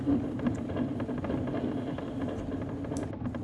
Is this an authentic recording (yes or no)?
yes